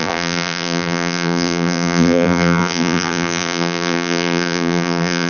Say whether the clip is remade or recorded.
remade